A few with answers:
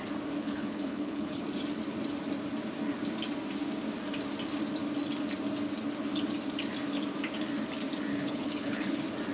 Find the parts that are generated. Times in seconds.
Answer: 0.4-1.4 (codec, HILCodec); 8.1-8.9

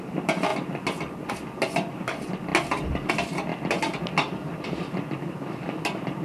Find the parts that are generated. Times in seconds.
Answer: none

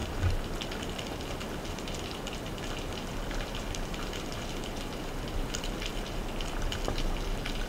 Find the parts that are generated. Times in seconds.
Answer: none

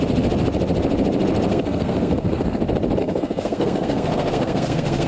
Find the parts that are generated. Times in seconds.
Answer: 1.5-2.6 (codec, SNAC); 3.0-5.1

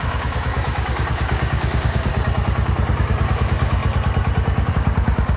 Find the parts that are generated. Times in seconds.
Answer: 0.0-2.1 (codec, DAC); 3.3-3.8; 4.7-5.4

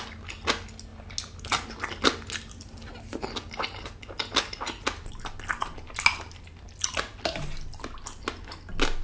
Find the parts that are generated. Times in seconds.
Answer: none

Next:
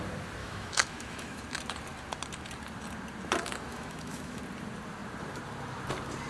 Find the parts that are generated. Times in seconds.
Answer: 0.4-1.4 (autoencoder, DAC-VAE); 3.7-4.4

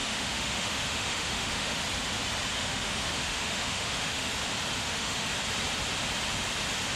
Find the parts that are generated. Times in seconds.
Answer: 0.0-1.8 (autoencoder, DAC-VAE); 2.5-4.3; 4.8-5.3